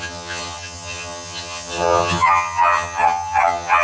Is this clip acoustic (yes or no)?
no